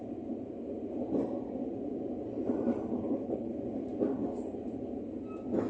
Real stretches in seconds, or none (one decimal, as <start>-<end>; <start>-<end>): 0.0-2.9; 3.5-5.7